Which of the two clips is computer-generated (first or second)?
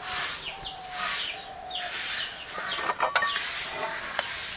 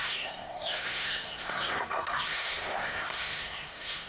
second